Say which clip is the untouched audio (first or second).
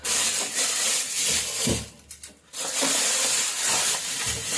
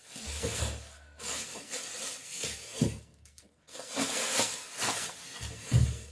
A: first